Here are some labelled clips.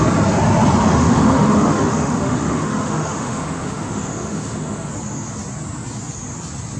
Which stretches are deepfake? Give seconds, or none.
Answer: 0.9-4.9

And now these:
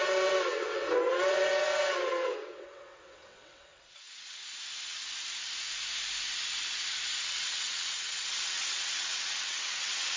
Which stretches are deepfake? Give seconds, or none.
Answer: 0.0-4.4; 7.2-10.2

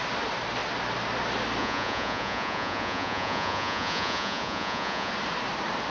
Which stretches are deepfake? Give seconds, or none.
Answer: 1.6-5.1

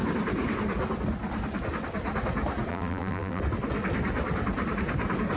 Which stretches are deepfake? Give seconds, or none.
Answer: 2.7-3.4